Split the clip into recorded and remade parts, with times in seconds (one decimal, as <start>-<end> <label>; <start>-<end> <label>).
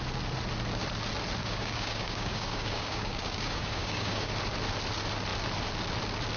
0.0-1.4 recorded; 1.4-4.3 remade; 4.3-6.4 recorded